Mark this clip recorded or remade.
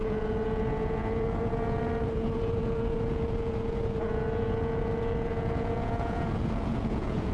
remade